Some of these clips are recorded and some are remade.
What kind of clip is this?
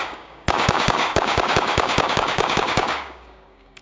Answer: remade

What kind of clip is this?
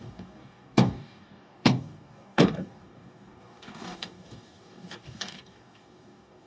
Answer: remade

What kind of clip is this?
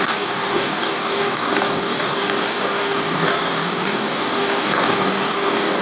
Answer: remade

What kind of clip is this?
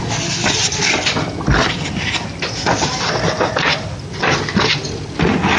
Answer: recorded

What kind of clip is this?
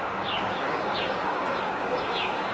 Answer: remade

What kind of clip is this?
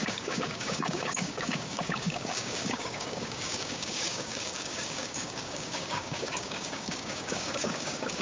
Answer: remade